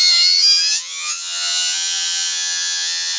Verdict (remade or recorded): remade